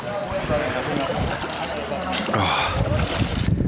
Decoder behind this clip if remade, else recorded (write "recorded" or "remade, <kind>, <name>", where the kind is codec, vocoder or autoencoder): recorded